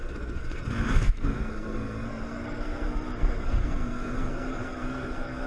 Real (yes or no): no